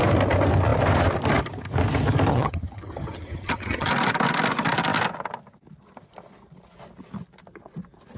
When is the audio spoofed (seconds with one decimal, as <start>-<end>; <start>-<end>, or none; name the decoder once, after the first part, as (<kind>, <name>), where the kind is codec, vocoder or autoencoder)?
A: 2.3-3.9 (vocoder, HiFi-GAN)